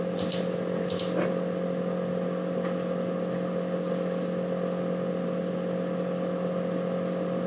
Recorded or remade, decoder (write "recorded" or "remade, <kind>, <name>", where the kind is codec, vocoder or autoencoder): recorded